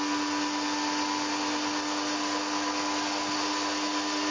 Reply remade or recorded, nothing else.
recorded